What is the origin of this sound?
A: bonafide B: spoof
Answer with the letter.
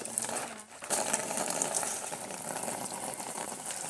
B